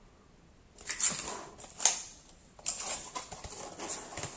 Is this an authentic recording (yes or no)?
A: yes